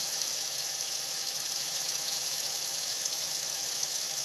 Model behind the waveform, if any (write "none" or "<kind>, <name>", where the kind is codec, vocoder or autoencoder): autoencoder, DAC-VAE